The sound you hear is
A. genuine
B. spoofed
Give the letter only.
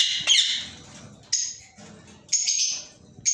A